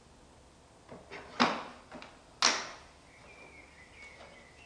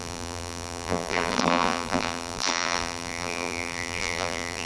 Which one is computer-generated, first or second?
second